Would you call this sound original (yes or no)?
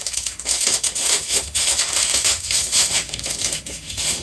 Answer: no